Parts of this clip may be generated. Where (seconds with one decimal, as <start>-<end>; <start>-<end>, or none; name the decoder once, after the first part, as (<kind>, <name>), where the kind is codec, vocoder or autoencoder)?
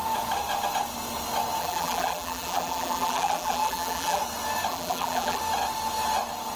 1.6-4.2 (vocoder, BigVGAN v2); 4.7-5.4